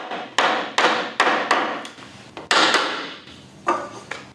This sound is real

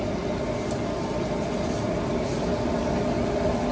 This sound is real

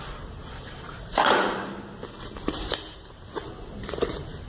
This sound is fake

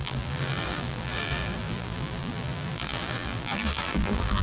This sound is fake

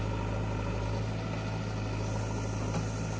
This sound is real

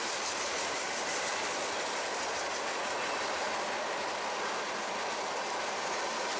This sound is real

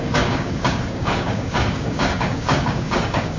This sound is fake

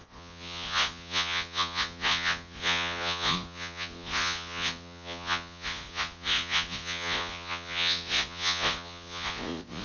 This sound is fake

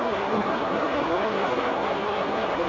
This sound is fake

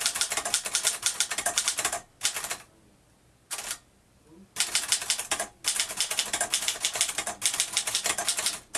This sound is real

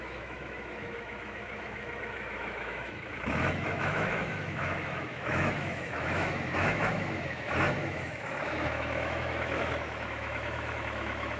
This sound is fake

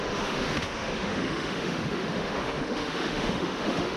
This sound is fake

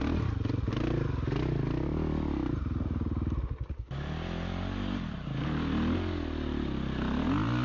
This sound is real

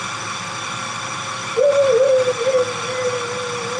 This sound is real